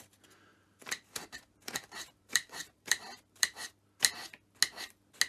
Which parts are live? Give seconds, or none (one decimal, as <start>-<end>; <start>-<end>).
0.0-0.5; 3.7-5.3